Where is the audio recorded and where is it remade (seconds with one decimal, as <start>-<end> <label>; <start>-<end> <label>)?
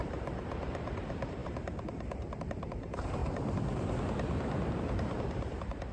0.0-3.2 remade; 3.2-4.8 recorded; 4.8-5.9 remade